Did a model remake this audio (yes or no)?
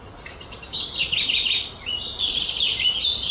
no